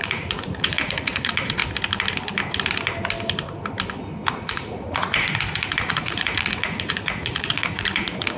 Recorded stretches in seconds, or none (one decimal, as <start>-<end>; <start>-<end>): 1.6-4.3

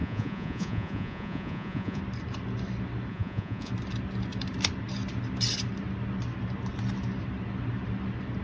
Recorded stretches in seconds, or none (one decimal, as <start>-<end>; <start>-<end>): 2.0-3.1; 3.7-8.4

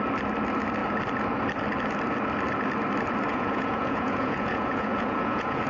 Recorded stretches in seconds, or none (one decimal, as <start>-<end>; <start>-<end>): 0.0-3.3

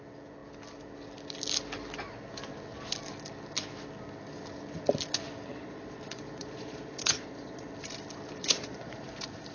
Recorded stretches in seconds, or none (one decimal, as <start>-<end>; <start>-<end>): 0.0-5.5; 7.7-8.4; 9.1-9.5

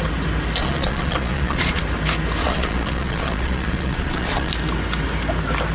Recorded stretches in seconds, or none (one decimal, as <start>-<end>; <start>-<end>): 0.0-0.6; 1.8-2.4; 4.5-5.7